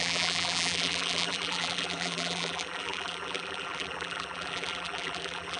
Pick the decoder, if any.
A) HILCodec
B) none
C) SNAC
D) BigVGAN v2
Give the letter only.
D